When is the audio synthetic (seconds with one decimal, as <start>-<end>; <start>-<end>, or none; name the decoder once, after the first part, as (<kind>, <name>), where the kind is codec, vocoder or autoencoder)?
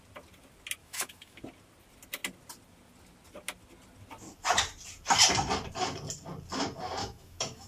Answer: 0.8-1.4 (autoencoder, DAC-VAE); 7.0-7.7